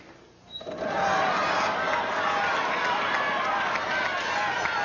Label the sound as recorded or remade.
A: recorded